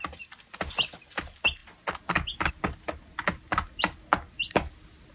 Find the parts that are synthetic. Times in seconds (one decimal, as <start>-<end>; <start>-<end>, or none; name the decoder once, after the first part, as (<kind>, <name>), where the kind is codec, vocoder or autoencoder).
none